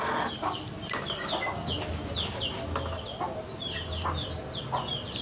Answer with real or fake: real